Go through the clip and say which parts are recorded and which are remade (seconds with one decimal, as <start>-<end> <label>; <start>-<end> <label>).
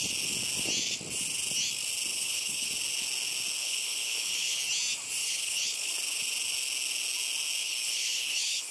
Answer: 0.0-2.1 recorded; 2.1-2.7 remade; 2.7-3.6 recorded; 3.6-4.6 remade; 4.6-5.2 recorded; 5.2-5.9 remade; 5.9-7.6 recorded; 7.6-8.7 remade